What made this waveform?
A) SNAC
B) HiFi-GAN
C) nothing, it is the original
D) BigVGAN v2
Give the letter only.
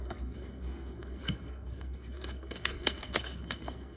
A